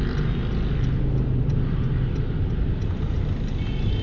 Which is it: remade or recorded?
recorded